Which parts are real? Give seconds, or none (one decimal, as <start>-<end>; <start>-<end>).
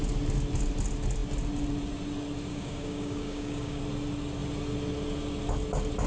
0.0-2.5; 3.8-6.1